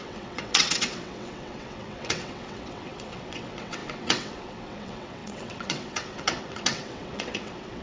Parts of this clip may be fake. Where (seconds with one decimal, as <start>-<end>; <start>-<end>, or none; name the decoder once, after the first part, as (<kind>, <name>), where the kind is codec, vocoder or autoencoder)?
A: 0.0-7.8 (vocoder, WaveNeXt)